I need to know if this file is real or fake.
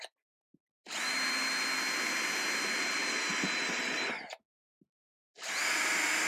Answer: real